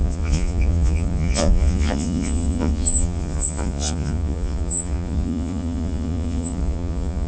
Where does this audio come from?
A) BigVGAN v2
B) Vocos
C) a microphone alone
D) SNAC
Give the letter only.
B